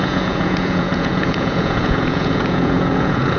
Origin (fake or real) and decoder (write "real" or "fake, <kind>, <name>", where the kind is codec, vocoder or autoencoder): fake, vocoder, Vocos